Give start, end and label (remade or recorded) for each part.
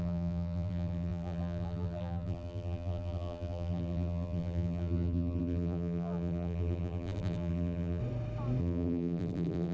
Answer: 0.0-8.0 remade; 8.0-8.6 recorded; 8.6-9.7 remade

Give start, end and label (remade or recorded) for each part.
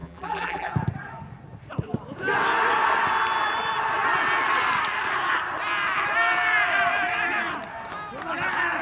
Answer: 0.0-0.7 remade; 0.7-8.8 recorded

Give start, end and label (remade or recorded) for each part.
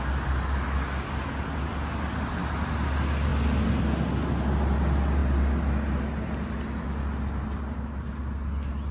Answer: 0.0-8.9 recorded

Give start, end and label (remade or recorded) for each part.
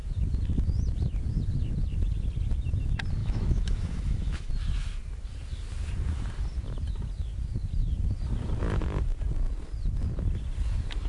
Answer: 0.0-3.2 recorded; 3.2-4.5 remade; 4.5-11.1 recorded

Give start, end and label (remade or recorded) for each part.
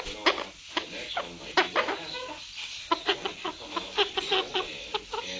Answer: 0.0-2.9 recorded; 2.9-3.5 remade; 3.5-4.1 recorded; 4.1-4.7 remade; 4.7-5.4 recorded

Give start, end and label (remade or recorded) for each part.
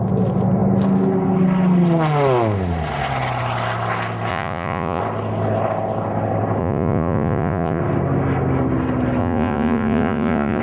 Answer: 0.0-4.3 recorded; 4.3-5.0 remade; 5.0-6.6 recorded; 6.6-7.8 remade; 7.8-9.2 recorded; 9.2-10.6 remade